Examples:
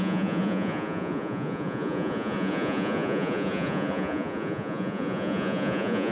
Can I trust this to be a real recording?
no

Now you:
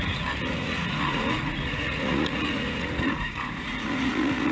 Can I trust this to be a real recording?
no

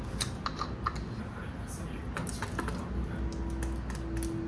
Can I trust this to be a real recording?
yes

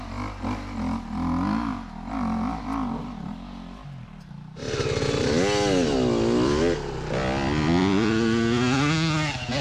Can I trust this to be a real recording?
yes